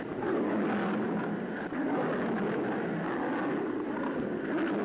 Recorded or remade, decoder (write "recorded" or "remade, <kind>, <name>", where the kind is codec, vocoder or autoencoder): recorded